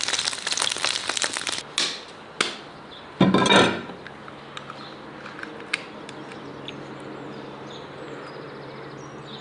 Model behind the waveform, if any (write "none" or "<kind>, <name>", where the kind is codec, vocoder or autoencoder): none